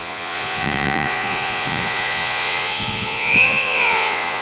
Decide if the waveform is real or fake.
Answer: fake